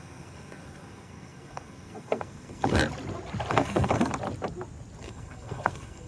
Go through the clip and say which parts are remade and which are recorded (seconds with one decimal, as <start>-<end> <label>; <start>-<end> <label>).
0.0-2.8 remade; 2.8-3.5 recorded; 3.5-4.1 remade; 4.1-5.0 recorded; 5.0-6.1 remade